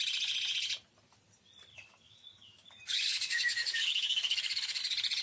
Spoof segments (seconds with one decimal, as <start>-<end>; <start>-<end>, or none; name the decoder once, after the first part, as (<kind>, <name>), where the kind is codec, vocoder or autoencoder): 1.7-4.8 (codec, DAC)

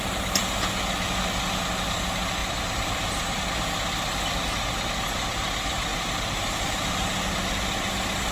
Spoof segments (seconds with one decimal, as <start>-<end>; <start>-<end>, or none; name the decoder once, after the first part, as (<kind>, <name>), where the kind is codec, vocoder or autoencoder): 2.4-3.4 (vocoder, BigVGAN v2); 5.9-7.6

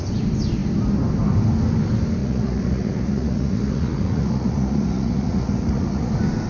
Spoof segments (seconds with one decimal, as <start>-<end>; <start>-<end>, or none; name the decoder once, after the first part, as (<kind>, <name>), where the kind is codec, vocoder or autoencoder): 2.2-6.1 (vocoder, Vocos)

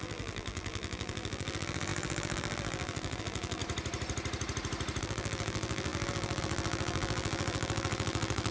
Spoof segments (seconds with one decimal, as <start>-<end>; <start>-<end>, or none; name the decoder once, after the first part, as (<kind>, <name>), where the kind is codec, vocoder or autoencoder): 0.0-3.6 (vocoder, BigVGAN v2); 5.0-8.5